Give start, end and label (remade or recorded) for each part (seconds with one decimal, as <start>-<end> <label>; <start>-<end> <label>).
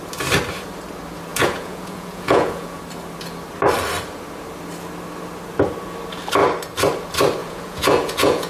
0.0-1.3 recorded; 1.3-2.8 remade; 2.8-7.4 recorded; 7.4-8.5 remade